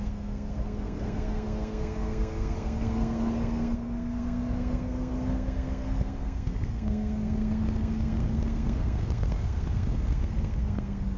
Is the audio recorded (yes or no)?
no